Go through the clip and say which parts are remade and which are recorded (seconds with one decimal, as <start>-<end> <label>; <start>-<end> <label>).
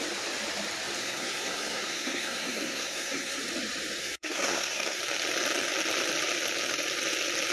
0.0-1.0 recorded; 1.0-3.4 remade; 3.4-4.0 recorded; 4.0-5.0 remade; 5.0-7.5 recorded